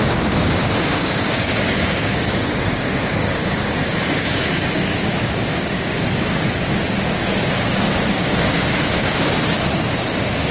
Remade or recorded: remade